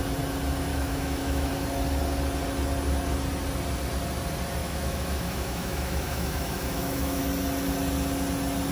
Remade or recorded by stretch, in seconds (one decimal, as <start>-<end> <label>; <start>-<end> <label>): 0.0-0.7 recorded; 0.7-1.5 remade; 1.5-4.6 recorded; 4.6-7.2 remade; 7.2-8.7 recorded